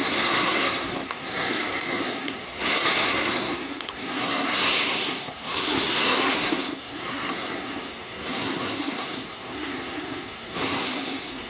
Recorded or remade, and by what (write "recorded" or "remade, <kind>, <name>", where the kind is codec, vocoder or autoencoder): remade, codec, SNAC